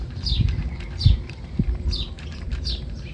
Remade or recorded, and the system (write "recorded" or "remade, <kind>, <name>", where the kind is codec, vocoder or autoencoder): remade, vocoder, BigVGAN v2